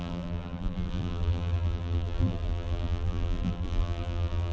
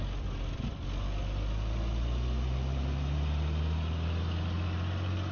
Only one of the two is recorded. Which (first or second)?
second